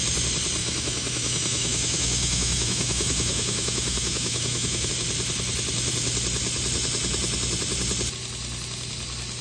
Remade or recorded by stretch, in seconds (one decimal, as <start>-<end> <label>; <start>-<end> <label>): 0.0-0.6 recorded; 0.6-4.9 remade; 4.9-9.4 recorded